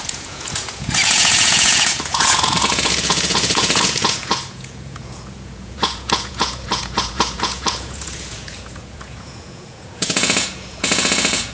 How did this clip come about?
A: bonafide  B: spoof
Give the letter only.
B